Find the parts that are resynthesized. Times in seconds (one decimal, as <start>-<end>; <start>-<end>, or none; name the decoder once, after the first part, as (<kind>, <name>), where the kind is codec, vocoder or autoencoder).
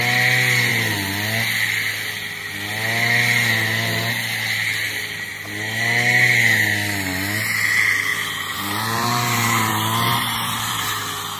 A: 8.1-9.7 (vocoder, BigVGAN v2); 10.1-11.0